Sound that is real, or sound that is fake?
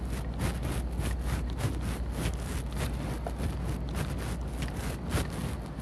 real